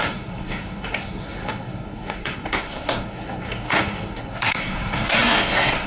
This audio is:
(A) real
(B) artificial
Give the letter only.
B